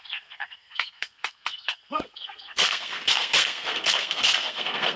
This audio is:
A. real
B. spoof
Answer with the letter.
B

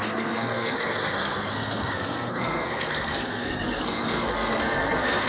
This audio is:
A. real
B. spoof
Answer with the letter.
B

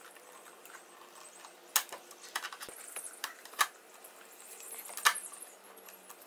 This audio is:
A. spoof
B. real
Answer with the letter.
B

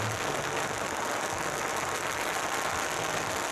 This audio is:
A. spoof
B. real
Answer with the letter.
B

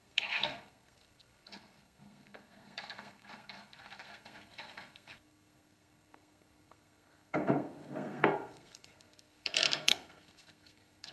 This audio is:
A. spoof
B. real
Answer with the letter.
A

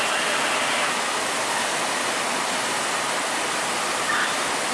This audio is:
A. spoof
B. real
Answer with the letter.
B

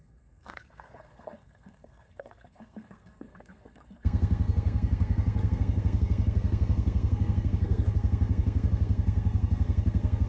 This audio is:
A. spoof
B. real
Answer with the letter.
A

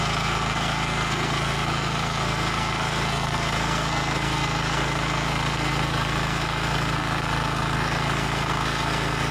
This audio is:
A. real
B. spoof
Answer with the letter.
B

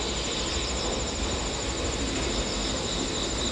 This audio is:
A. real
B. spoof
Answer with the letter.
A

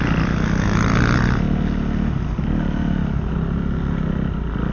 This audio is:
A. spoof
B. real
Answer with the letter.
B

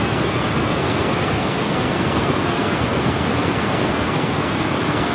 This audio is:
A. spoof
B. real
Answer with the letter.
A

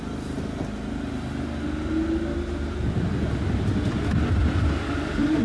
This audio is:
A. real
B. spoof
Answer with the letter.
A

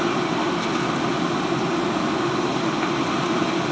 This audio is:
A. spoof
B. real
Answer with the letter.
B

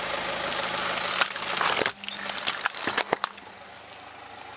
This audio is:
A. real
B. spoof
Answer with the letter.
A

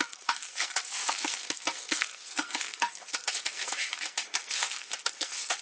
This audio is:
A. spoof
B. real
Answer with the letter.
A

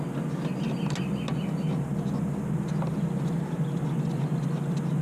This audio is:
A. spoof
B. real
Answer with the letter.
B